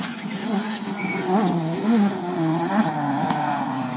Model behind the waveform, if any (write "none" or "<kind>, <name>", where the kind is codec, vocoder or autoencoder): vocoder, Vocos